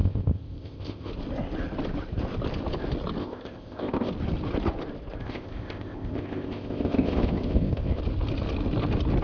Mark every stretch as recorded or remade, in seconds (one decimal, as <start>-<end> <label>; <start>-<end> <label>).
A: 0.0-1.1 remade; 1.1-3.2 recorded; 3.2-4.1 remade; 4.1-5.2 recorded; 5.2-8.0 remade; 8.0-9.2 recorded